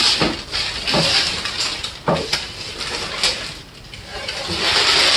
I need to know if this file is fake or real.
real